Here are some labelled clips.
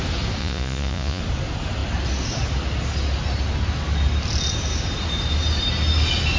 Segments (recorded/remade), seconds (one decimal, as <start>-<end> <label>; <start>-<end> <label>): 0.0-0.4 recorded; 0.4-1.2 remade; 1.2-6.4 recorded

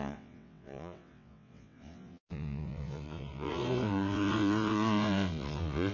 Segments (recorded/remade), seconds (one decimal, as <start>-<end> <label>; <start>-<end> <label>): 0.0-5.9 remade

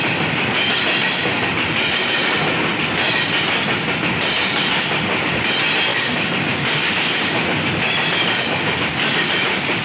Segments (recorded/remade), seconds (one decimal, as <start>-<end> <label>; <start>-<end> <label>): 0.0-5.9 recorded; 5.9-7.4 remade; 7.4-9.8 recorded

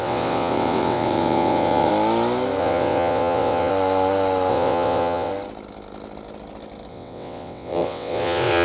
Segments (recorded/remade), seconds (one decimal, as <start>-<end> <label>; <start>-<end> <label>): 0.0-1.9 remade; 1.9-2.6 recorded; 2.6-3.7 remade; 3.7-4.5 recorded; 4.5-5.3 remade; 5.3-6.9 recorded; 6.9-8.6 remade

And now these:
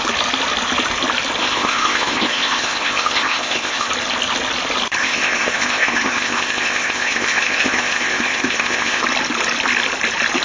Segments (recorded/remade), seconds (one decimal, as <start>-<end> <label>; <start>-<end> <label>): 0.0-1.4 recorded; 1.4-3.9 remade; 3.9-5.0 recorded; 5.0-9.0 remade; 9.0-10.4 recorded

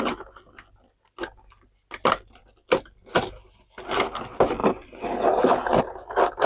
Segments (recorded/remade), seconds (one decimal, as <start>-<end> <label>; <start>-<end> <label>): 0.0-3.1 recorded; 3.1-3.6 remade; 3.6-6.5 recorded

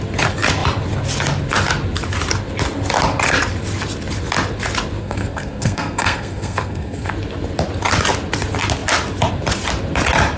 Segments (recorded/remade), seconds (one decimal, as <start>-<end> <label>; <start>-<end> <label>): 0.0-5.0 recorded; 5.0-7.1 remade; 7.1-10.4 recorded